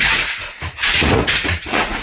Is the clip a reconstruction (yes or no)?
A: yes